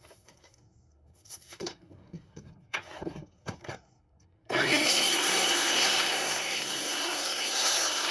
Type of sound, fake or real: fake